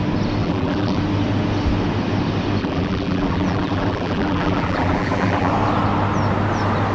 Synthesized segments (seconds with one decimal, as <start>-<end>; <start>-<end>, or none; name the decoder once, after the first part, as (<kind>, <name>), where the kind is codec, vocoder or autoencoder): 0.4-1.0 (vocoder, BigVGAN v2); 2.6-5.5

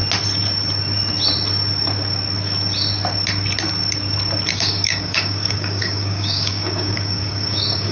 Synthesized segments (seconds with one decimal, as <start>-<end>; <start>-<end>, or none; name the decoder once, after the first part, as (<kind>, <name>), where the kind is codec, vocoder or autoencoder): 4.5-7.9 (codec, DAC)

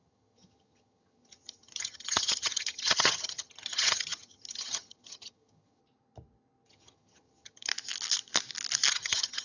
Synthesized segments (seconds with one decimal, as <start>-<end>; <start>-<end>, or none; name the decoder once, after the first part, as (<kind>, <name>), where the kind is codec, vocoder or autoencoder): 0.0-5.8 (vocoder, HiFi-GAN); 6.7-7.7; 8.9-9.4

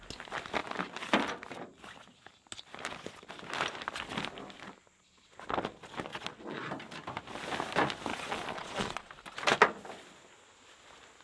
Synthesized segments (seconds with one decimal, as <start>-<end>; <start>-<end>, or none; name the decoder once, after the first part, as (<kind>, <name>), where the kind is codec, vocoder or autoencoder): 6.1-6.7 (vocoder, Vocos); 8.1-9.1

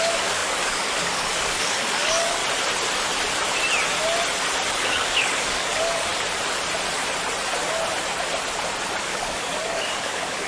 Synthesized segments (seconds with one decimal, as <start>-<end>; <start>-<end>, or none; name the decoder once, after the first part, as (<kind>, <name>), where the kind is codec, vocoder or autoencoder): 0.0-2.4 (codec, DAC); 4.8-6.1; 9.0-10.5

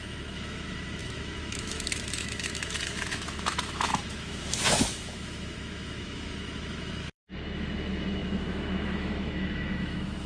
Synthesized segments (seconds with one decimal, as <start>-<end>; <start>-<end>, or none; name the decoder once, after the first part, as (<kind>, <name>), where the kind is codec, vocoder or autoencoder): 0.0-10.3 (autoencoder, DAC-VAE)